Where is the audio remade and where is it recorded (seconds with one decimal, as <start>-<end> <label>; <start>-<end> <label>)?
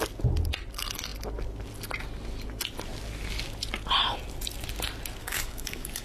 0.0-5.2 recorded; 5.2-6.0 remade